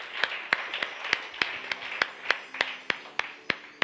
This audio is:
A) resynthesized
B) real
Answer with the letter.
B